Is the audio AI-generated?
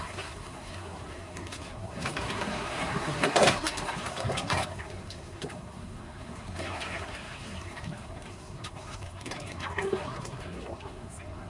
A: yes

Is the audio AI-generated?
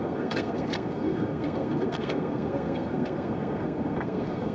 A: yes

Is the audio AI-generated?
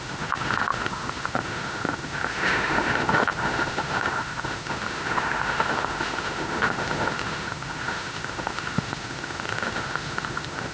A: yes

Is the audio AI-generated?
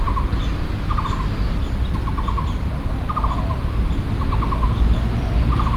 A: no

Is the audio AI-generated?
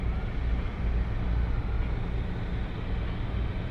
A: no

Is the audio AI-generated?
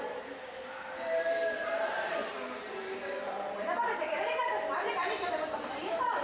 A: yes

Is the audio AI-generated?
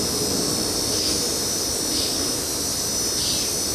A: no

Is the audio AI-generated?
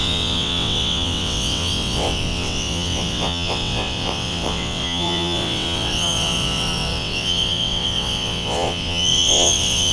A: yes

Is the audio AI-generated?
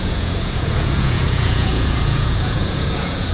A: yes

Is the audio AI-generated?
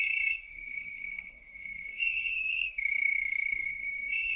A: yes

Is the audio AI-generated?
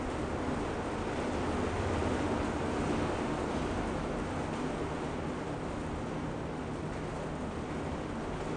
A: no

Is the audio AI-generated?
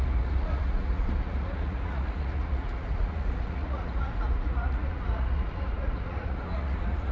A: yes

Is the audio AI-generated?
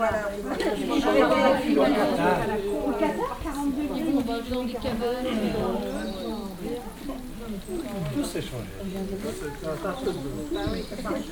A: no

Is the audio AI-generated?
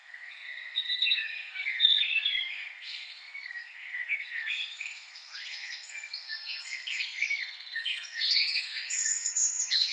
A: yes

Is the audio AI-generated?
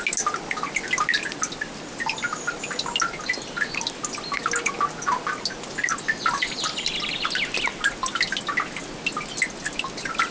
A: no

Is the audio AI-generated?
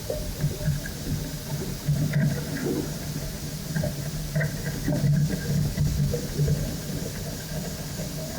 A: no